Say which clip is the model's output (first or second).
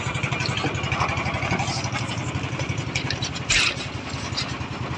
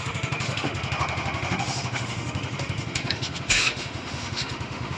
second